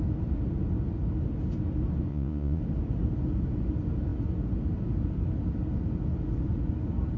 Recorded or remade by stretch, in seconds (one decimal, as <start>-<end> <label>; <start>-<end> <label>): 0.0-2.1 recorded; 2.1-2.6 remade; 2.6-7.2 recorded